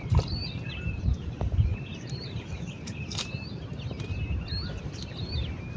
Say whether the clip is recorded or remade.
remade